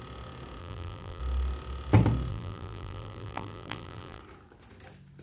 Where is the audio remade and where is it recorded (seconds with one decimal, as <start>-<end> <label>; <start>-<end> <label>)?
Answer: 0.0-0.6 recorded; 0.6-1.2 remade; 1.2-2.3 recorded; 2.3-4.2 remade; 4.2-5.2 recorded

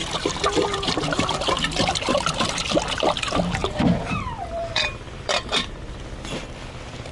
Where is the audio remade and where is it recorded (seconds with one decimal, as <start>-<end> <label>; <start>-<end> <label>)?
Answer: 0.0-1.4 remade; 1.4-3.6 recorded; 3.6-6.0 remade; 6.0-7.1 recorded